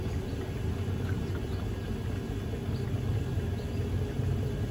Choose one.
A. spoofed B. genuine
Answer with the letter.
B